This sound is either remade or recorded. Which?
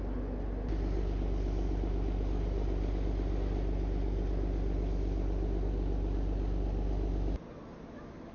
recorded